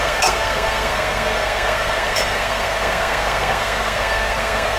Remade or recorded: remade